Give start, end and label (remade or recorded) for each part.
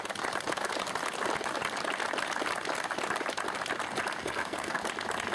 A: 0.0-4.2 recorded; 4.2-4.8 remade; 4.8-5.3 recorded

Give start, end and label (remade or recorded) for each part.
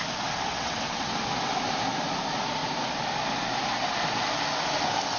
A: 0.0-0.5 recorded; 0.5-1.2 remade; 1.2-5.2 recorded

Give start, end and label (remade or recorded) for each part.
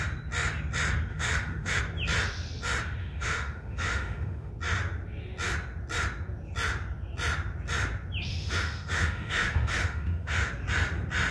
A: 0.0-1.1 recorded; 1.1-1.8 remade; 1.8-3.0 recorded; 3.0-4.5 remade; 4.5-8.3 recorded; 8.3-10.5 remade; 10.5-11.3 recorded